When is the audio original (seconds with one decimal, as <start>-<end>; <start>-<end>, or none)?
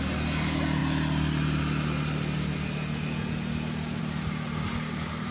0.0-5.3